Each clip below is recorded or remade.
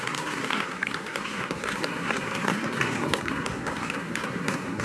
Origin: remade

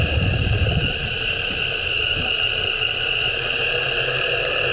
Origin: recorded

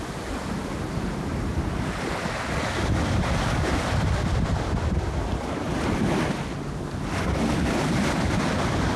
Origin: recorded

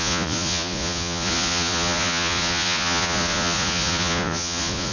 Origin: remade